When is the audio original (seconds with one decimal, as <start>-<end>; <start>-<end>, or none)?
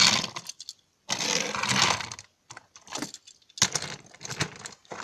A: 0.0-5.0